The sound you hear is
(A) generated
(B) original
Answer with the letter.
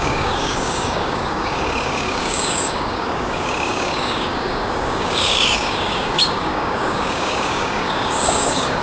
A